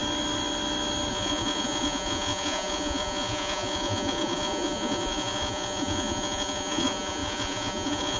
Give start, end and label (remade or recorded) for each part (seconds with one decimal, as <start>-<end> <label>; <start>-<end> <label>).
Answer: 0.0-1.1 recorded; 1.1-8.2 remade

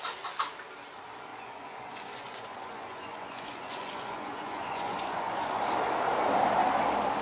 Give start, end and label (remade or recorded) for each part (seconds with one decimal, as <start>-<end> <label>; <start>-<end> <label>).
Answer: 0.0-1.3 recorded; 1.3-5.6 remade; 5.6-7.2 recorded

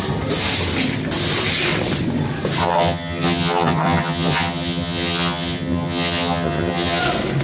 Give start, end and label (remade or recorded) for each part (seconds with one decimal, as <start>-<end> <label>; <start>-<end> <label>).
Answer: 0.0-2.6 recorded; 2.6-7.0 remade; 7.0-7.4 recorded

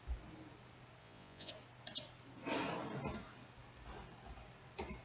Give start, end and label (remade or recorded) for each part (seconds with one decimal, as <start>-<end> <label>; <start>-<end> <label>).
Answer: 0.0-1.0 recorded; 1.0-1.5 remade; 1.5-5.0 recorded